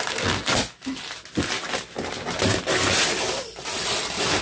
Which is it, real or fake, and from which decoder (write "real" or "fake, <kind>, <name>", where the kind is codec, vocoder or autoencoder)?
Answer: real